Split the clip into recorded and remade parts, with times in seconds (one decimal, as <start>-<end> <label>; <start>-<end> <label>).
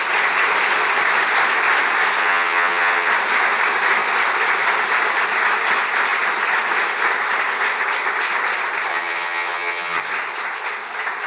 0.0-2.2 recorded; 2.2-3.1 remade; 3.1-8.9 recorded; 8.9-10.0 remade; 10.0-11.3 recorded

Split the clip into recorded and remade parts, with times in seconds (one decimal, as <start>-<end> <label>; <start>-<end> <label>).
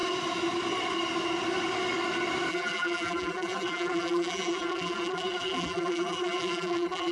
0.0-2.5 recorded; 2.5-7.1 remade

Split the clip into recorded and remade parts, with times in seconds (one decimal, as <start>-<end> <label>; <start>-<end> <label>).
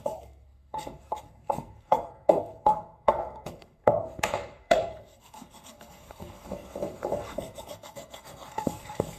0.0-9.2 remade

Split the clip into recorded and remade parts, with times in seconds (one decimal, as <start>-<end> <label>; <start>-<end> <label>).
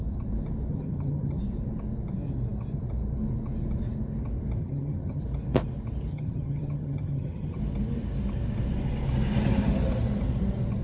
0.0-0.7 recorded; 0.7-1.4 remade; 1.4-4.6 recorded; 4.6-5.2 remade; 5.2-6.1 recorded; 6.1-7.6 remade; 7.6-10.8 recorded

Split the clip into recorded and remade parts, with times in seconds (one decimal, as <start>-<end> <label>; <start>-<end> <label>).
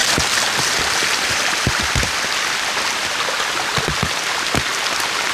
0.0-3.2 remade; 3.2-5.3 recorded